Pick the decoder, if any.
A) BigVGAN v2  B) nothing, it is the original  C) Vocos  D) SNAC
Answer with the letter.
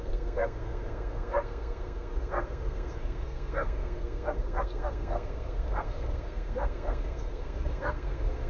D